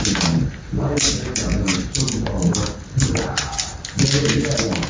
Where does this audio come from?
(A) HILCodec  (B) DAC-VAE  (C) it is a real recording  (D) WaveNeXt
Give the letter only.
C